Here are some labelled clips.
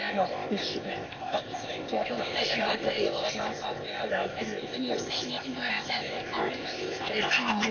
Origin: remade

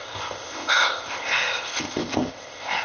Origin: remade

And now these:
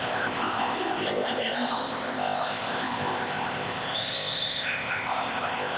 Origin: remade